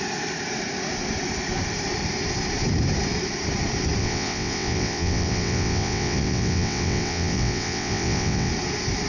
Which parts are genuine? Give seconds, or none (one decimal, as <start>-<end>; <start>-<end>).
0.0-4.0; 8.5-9.1